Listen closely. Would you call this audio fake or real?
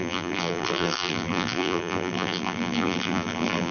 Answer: fake